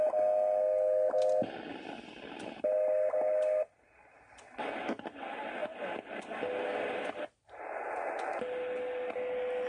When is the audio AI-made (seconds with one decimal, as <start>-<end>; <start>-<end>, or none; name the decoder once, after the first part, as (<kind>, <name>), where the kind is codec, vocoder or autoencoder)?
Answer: none

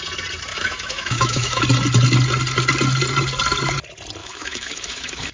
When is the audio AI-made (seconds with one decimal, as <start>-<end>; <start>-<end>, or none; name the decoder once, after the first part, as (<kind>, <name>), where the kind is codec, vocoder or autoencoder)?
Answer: 0.5-1.6 (autoencoder, DAC-VAE); 4.2-5.3